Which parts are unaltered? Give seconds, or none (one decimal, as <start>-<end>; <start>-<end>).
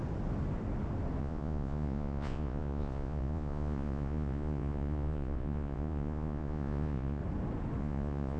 0.0-1.2; 7.2-7.8